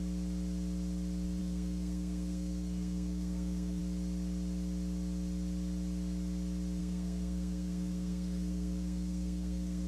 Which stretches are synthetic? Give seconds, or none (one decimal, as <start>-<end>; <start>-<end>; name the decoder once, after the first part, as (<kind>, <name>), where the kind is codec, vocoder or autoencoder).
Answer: 1.4-3.8 (codec, SNAC); 6.8-9.9